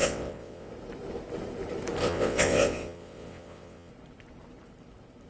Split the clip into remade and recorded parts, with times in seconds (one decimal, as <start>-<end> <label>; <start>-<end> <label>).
0.0-0.7 remade; 0.7-2.0 recorded; 2.0-3.9 remade; 3.9-5.3 recorded